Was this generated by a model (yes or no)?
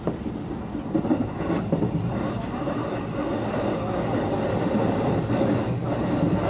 no